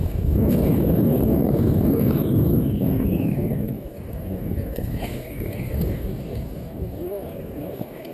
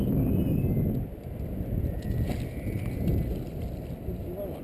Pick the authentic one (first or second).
second